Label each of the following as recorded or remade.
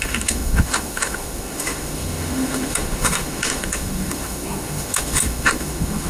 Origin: remade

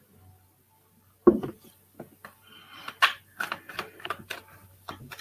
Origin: recorded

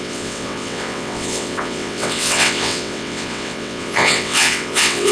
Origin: remade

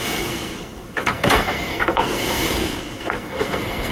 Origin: remade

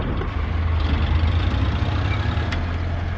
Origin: recorded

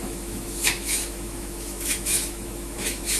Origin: remade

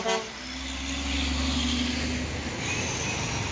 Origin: recorded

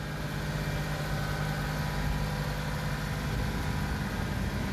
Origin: recorded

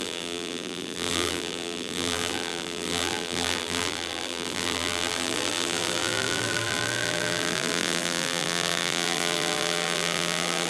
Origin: remade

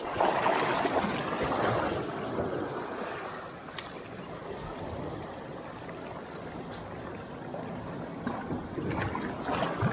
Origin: recorded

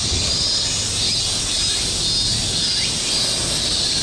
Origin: recorded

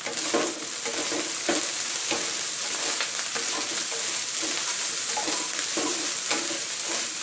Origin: recorded